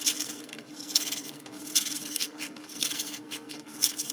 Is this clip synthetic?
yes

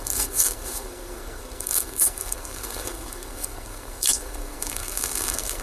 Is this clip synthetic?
yes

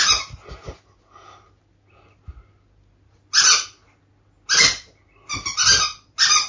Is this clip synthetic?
no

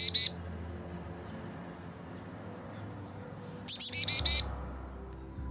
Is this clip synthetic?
no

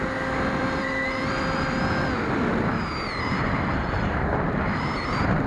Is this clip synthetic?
yes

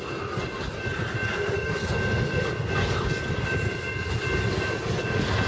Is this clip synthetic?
no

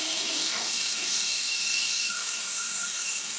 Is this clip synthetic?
yes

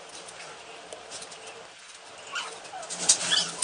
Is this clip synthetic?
no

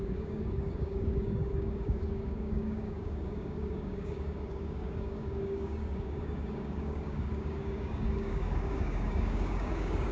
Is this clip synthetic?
yes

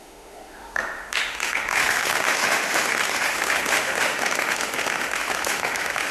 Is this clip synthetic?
yes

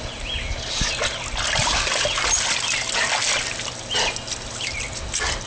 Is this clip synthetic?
no